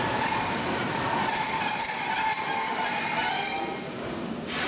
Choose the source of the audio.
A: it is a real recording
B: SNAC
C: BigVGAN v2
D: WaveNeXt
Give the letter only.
A